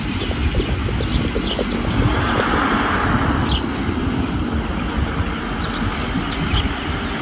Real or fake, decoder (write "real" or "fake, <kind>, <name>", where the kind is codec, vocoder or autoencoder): real